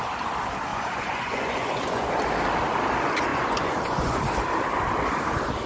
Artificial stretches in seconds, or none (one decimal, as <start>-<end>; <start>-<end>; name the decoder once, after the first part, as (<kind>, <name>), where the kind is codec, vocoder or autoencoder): 0.7-2.1 (vocoder, Vocos); 3.3-4.2